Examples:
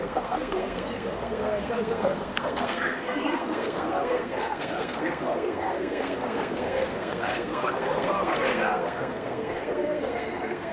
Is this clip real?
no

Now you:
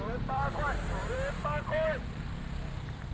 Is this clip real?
no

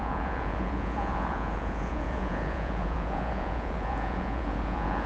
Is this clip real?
no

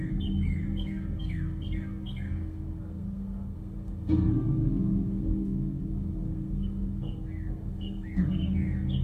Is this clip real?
no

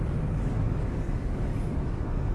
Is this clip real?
no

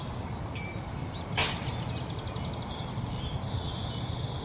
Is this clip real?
yes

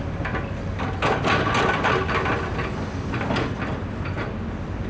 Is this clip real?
yes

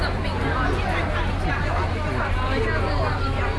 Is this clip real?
yes